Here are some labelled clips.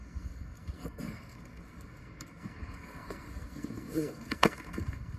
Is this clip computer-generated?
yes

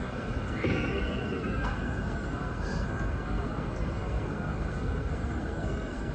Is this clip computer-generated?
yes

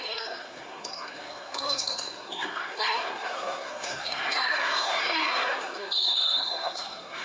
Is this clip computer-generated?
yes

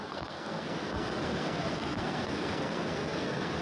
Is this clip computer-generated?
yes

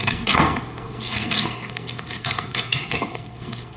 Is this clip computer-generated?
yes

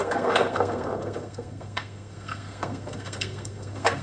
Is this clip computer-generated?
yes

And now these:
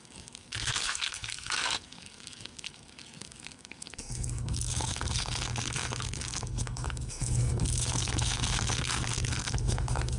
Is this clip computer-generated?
yes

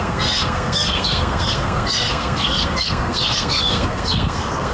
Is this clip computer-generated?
yes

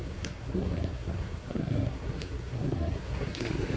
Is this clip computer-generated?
yes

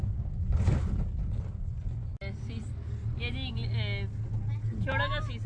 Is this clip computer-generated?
no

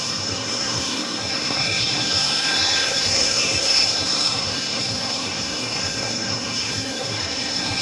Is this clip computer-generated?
yes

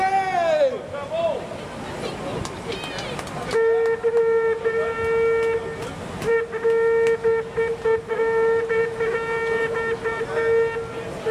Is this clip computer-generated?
no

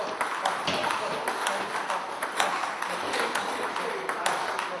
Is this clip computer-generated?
no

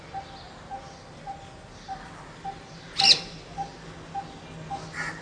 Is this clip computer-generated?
no